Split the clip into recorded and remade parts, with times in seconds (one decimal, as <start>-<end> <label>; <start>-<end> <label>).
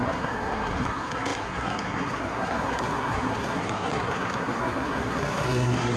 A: 0.0-6.0 remade